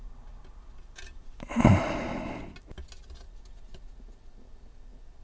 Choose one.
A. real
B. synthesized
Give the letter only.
A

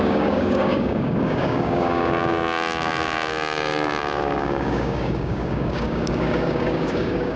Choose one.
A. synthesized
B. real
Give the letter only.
A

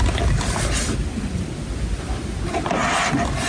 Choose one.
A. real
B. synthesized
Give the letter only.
A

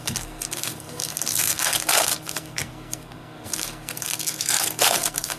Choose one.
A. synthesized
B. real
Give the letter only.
A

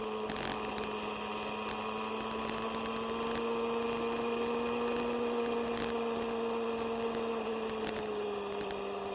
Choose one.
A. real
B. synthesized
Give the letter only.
A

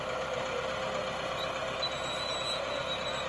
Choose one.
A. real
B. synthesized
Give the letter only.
A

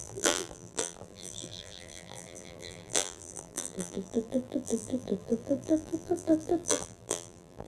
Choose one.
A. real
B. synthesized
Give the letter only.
B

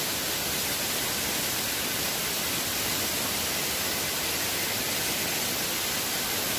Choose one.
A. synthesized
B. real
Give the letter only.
B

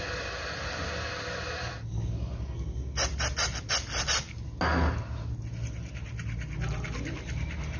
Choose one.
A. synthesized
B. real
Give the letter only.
B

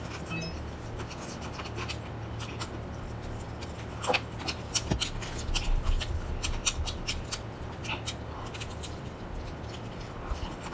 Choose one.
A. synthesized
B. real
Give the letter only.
B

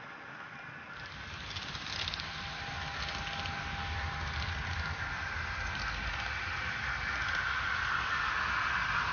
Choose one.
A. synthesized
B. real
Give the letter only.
B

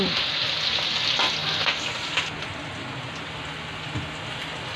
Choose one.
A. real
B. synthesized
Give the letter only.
A